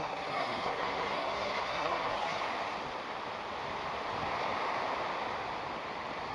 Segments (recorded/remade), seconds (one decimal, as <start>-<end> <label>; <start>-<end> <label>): 0.0-2.4 remade; 2.4-6.3 recorded